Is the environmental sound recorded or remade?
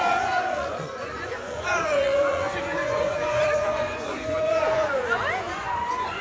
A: remade